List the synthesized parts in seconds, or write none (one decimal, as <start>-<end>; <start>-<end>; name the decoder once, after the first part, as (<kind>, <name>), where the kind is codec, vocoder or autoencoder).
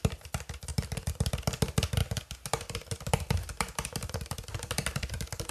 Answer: none